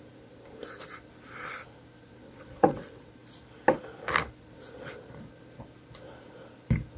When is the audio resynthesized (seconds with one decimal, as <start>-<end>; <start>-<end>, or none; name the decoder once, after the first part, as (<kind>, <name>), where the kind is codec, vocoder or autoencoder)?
2.2-3.1 (vocoder, WaveNeXt)